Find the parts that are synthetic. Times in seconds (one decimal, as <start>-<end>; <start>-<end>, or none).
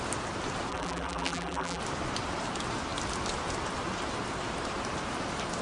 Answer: 0.7-1.8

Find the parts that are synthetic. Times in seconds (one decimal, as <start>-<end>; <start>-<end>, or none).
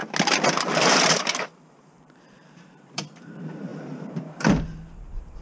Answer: 1.0-5.4